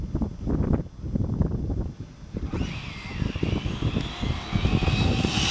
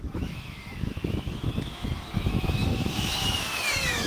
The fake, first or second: second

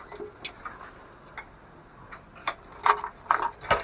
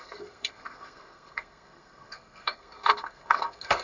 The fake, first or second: second